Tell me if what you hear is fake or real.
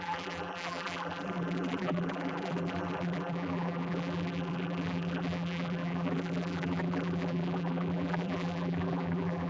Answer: fake